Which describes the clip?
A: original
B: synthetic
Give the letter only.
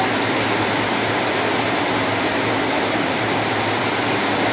A